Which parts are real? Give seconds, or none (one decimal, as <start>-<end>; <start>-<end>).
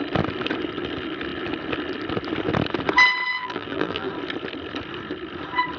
0.0-3.3; 4.1-5.8